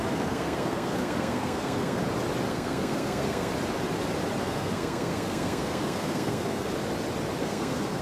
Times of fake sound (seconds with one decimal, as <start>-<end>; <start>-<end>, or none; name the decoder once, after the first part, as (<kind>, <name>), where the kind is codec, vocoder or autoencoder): 0.0-2.0 (codec, SNAC); 2.5-3.5; 4.4-6.7; 7.4-8.0